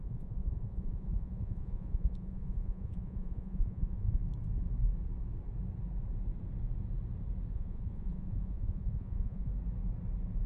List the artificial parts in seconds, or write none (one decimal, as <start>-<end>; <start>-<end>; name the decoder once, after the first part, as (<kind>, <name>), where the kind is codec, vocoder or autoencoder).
0.0-4.2 (vocoder, Vocos); 7.5-9.5